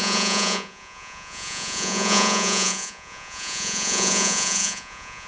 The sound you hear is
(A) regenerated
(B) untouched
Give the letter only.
A